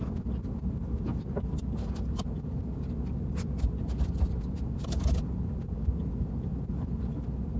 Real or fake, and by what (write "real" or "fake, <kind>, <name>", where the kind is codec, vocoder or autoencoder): real